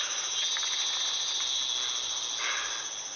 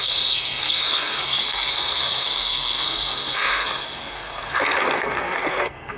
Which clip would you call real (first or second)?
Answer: first